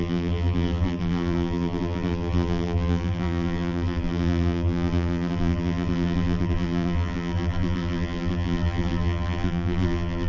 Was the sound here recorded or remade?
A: remade